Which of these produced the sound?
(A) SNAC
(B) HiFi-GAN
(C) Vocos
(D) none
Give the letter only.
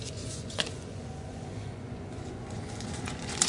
C